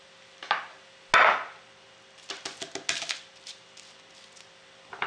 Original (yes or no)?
yes